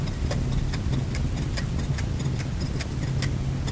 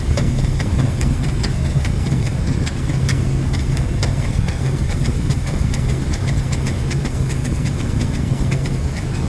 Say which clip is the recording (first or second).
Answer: first